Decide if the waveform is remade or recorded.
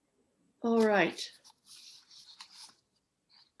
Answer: recorded